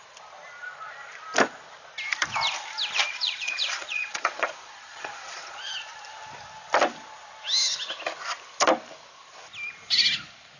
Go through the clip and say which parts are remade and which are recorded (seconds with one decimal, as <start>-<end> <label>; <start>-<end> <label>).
0.0-3.1 recorded; 3.1-5.6 remade; 5.6-10.6 recorded